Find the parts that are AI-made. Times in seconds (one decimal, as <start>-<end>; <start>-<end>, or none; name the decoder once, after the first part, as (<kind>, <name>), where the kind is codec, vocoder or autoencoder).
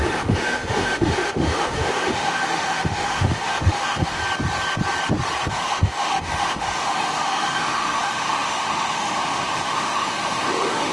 0.0-4.2 (autoencoder, DAC-VAE); 5.5-10.9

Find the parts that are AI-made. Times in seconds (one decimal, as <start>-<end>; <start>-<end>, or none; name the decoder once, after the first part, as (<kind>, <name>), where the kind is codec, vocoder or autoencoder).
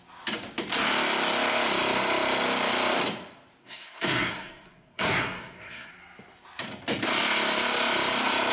3.6-5.9 (codec, SNAC)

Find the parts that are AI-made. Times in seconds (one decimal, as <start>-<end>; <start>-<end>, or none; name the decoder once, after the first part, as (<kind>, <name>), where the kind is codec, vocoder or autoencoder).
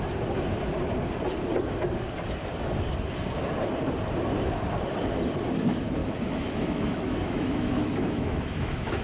6.0-9.0 (autoencoder, DAC-VAE)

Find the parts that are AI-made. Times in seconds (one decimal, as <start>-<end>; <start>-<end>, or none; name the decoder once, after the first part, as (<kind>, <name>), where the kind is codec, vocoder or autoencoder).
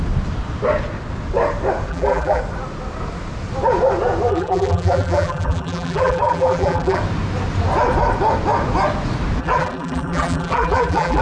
1.9-2.4 (vocoder, BigVGAN v2); 4.3-7.0; 9.4-11.2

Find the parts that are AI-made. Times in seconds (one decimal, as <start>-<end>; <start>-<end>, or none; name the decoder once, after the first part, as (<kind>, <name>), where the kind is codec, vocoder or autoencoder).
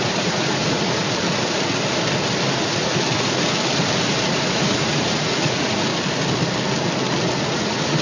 0.0-1.0 (vocoder, Vocos); 2.5-2.9; 4.1-5.9; 7.4-8.0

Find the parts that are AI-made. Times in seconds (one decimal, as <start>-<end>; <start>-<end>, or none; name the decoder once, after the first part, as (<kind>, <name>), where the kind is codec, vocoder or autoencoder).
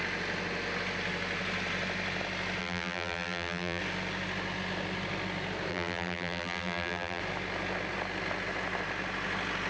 2.6-3.8 (vocoder, BigVGAN v2); 5.7-7.2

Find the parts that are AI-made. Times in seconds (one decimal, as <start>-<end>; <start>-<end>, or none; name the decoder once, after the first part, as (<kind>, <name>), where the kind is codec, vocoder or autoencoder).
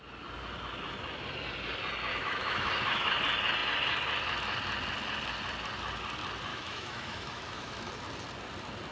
2.1-3.2 (autoencoder, DAC-VAE); 6.5-7.9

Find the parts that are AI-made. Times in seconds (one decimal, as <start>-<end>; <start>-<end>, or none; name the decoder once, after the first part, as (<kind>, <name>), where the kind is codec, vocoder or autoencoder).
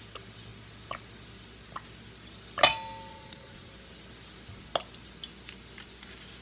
3.1-3.7 (vocoder, Vocos)